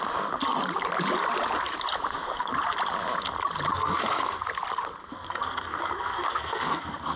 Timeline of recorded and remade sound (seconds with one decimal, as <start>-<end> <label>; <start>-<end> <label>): 0.0-3.7 recorded; 3.7-4.4 remade; 4.4-5.0 recorded; 5.0-7.2 remade